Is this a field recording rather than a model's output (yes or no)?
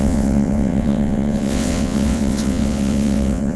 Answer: no